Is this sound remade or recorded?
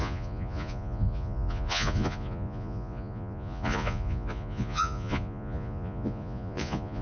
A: remade